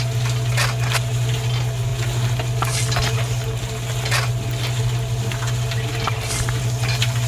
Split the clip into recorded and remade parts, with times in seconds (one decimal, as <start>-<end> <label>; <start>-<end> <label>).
0.0-7.3 recorded